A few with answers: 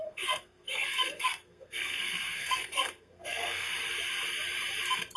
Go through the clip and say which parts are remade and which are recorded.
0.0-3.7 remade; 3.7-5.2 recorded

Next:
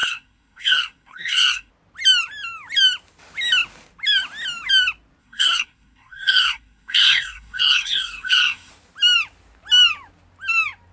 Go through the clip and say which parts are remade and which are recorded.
0.0-1.7 remade; 1.7-5.2 recorded; 5.2-8.7 remade; 8.7-10.9 recorded

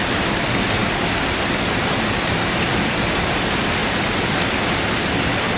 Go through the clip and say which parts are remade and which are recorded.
0.0-5.6 recorded

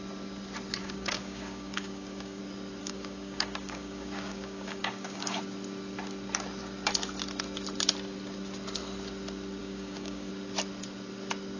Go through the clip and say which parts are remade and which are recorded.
0.0-0.8 recorded; 0.8-2.4 remade; 2.4-2.8 recorded; 2.8-5.4 remade; 5.4-9.6 recorded; 9.6-10.3 remade; 10.3-11.6 recorded

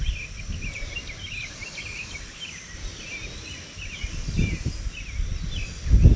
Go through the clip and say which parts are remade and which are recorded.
0.0-6.2 recorded

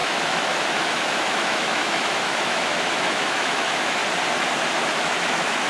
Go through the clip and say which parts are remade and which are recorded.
0.0-4.0 remade; 4.0-5.0 recorded; 5.0-5.7 remade

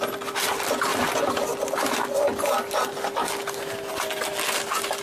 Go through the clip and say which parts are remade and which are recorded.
0.0-5.0 recorded